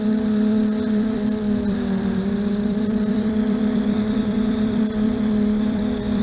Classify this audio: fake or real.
fake